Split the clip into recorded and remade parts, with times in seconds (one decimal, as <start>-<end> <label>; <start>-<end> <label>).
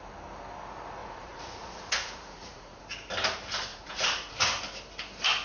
0.0-1.0 recorded; 1.0-2.8 remade; 2.8-3.7 recorded; 3.7-4.3 remade; 4.3-5.4 recorded